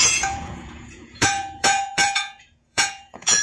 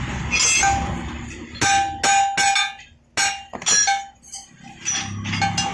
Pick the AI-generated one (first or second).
first